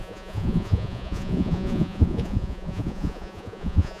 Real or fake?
fake